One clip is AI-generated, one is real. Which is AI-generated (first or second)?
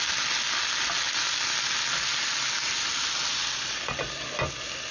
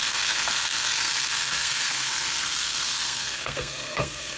second